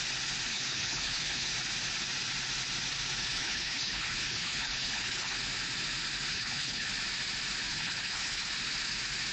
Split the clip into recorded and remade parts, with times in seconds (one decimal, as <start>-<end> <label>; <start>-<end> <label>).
0.0-0.5 recorded; 0.5-1.5 remade; 1.5-3.2 recorded; 3.2-5.4 remade; 5.4-6.3 recorded; 6.3-6.9 remade; 6.9-7.7 recorded; 7.7-8.5 remade; 8.5-9.3 recorded